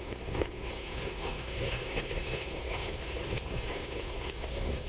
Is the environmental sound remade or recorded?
remade